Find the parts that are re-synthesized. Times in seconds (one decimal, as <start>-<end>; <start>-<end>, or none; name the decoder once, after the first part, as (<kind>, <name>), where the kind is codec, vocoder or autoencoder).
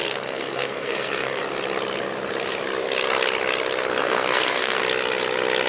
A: 0.0-1.4 (codec, SNAC); 4.0-4.8